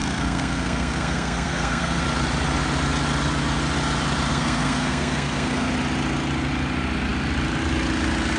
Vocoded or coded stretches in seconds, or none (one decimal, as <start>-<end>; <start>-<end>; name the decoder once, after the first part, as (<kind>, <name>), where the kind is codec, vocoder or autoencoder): 0.0-2.0 (codec, SNAC); 4.3-5.7

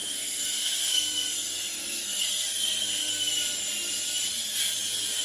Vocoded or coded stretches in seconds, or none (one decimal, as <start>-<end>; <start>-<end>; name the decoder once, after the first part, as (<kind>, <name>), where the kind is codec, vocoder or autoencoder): 0.0-3.1 (codec, SNAC)

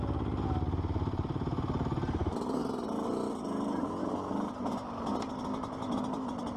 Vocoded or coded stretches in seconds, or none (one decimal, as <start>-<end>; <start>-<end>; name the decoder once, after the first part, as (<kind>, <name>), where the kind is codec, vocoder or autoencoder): none

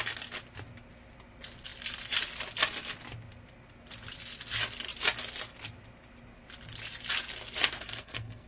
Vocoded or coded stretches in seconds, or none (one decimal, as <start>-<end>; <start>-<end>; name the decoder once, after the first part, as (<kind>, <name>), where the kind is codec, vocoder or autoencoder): 7.6-8.5 (codec, SNAC)

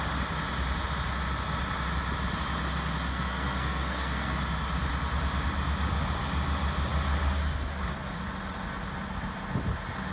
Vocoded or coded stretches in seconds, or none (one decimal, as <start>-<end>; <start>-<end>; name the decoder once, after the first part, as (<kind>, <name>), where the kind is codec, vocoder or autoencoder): 3.1-4.4 (codec, SNAC)

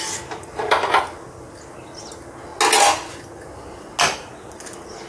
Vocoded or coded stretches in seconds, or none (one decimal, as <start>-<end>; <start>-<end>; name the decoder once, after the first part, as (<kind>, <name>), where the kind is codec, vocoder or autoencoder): none

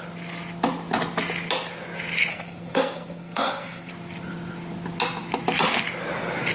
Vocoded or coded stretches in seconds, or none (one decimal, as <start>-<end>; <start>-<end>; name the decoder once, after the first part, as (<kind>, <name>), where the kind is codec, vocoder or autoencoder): 2.3-3.9 (codec, SNAC)

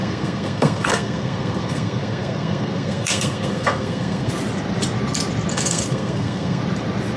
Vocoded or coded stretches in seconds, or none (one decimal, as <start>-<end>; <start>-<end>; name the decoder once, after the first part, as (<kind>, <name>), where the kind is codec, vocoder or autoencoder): 0.0-4.3 (codec, SNAC); 5.5-6.6